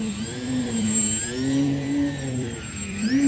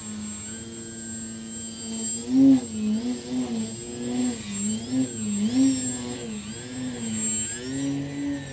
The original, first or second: second